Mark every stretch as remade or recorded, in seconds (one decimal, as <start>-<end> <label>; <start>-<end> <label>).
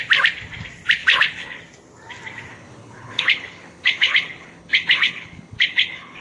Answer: 0.0-1.0 recorded; 1.0-1.6 remade; 1.6-2.5 recorded; 2.5-6.2 remade